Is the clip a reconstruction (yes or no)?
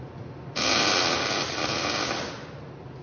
no